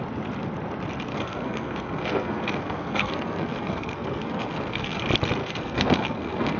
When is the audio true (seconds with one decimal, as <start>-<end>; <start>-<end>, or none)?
0.0-1.1; 5.0-5.4